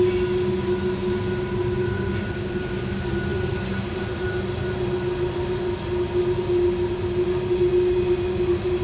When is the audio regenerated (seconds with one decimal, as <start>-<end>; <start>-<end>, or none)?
none